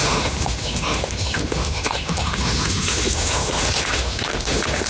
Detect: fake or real fake